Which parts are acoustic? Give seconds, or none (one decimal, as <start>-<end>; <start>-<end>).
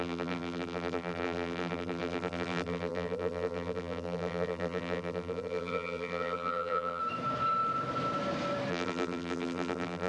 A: 7.0-8.7